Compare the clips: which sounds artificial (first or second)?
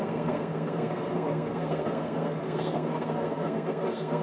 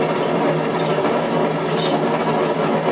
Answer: first